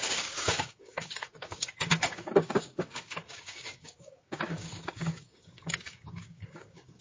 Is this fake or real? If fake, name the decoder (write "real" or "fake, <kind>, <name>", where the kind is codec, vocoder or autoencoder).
fake, codec, DAC